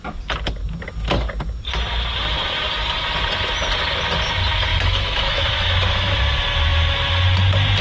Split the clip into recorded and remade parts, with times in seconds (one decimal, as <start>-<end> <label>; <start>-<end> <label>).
0.0-4.7 recorded; 4.7-6.2 remade; 6.2-7.8 recorded